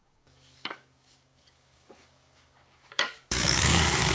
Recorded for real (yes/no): no